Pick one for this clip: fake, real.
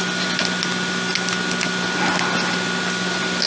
real